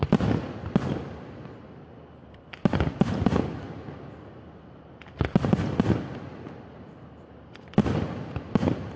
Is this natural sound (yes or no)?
yes